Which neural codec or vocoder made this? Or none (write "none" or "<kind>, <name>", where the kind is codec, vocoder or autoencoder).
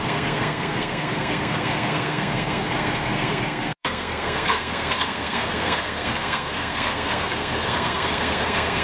codec, SNAC